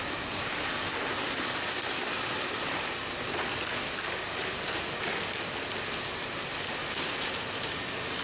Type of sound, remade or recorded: recorded